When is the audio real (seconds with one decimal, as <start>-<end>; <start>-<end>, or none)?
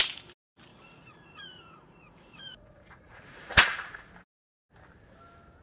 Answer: 0.0-0.7; 4.1-5.6